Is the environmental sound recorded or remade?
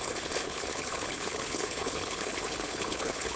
remade